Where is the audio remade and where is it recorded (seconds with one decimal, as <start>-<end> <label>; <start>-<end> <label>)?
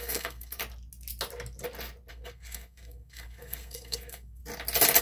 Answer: 0.0-0.6 remade; 0.6-2.1 recorded; 2.1-4.4 remade; 4.4-5.0 recorded